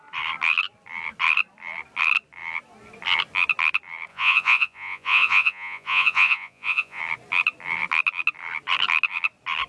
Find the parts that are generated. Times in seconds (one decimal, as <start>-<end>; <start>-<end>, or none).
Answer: 4.1-7.0